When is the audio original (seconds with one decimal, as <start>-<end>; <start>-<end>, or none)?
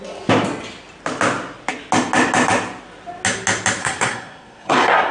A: 0.0-3.8